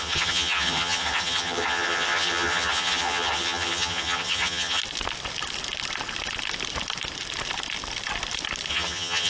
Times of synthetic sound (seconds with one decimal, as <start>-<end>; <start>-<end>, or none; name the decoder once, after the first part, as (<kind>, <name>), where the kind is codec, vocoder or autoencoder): 0.0-4.8 (vocoder, HiFi-GAN); 8.7-9.3